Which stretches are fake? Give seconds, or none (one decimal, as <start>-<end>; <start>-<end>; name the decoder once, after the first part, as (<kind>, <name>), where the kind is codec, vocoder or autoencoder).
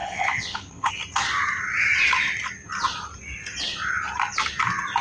0.0-0.9 (codec, HILCodec)